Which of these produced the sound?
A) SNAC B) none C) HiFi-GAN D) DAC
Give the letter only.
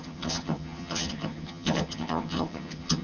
C